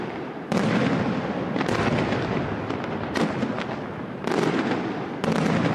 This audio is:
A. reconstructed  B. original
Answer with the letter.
B